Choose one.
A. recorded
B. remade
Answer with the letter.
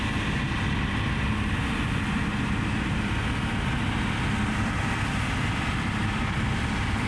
A